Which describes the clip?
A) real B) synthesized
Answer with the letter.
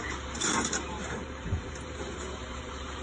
B